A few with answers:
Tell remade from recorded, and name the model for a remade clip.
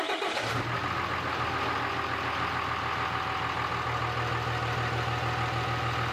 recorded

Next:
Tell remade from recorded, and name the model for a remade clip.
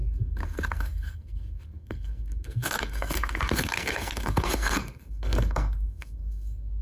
remade, codec, SNAC